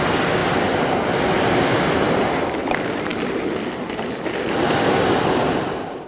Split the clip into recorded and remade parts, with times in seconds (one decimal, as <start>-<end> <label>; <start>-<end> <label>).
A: 0.0-6.1 recorded